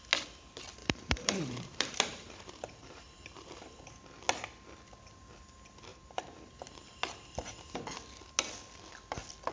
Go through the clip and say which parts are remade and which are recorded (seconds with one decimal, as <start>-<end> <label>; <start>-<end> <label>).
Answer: 0.0-0.8 recorded; 0.8-3.8 remade; 3.8-5.9 recorded; 5.9-6.6 remade; 6.6-9.5 recorded